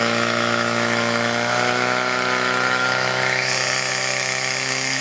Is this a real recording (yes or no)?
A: no